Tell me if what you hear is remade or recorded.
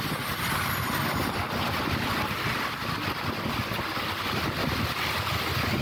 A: recorded